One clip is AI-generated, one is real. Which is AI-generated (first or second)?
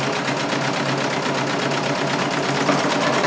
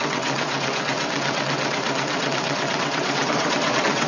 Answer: second